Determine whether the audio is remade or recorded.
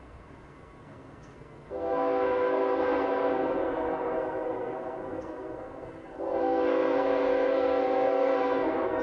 remade